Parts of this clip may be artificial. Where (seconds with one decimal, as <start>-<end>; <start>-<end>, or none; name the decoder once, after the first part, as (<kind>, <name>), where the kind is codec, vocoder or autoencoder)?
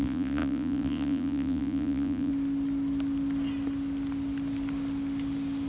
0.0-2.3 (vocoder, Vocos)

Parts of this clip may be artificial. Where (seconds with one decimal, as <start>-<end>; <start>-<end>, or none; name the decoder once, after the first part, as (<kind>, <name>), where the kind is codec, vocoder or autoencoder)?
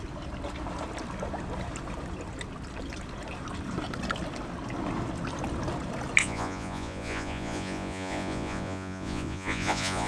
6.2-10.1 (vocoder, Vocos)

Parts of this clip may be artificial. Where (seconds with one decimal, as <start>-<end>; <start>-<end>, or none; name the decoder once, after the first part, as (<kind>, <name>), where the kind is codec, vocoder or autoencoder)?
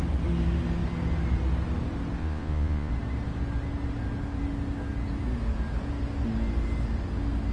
2.2-2.9 (vocoder, Vocos)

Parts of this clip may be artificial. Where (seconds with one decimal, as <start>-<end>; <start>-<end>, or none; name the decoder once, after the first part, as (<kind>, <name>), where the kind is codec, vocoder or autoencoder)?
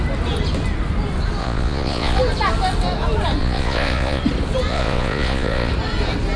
1.4-2.2 (vocoder, Vocos); 3.4-4.2; 4.7-5.7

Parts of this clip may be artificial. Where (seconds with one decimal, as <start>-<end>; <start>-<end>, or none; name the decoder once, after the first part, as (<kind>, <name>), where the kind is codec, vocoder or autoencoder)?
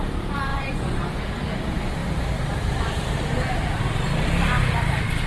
0.5-1.0 (vocoder, Vocos)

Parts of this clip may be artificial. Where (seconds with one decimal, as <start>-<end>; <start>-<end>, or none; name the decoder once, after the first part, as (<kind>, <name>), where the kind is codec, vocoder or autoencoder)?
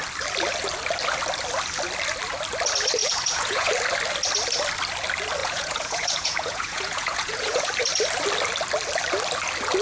3.0-3.7 (vocoder, Vocos); 5.4-7.7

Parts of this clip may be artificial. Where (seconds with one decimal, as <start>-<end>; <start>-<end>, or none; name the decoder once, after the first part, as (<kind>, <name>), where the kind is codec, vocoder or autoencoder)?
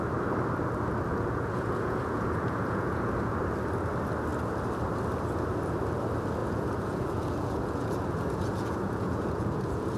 1.1-3.4 (vocoder, Vocos); 6.4-10.0